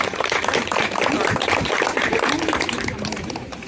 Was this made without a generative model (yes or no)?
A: no